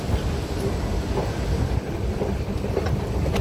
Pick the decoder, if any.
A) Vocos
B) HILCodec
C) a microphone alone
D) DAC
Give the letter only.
C